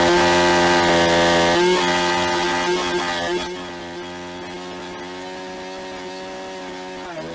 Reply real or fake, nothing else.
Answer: real